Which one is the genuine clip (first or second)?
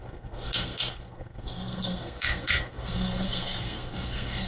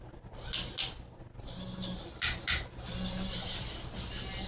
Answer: second